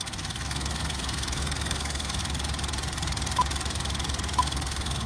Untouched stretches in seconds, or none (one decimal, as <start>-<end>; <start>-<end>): 2.2-4.4